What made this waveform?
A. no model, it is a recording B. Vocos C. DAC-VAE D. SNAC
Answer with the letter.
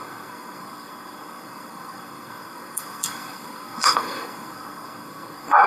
D